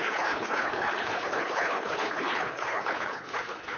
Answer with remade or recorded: remade